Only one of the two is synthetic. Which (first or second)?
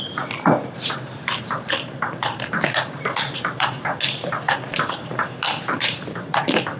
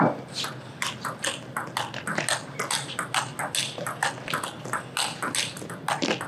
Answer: first